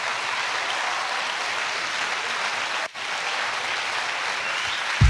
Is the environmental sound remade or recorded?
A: recorded